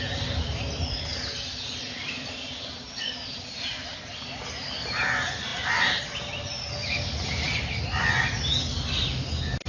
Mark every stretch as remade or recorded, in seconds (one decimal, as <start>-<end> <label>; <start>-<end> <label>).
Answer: 0.0-9.7 recorded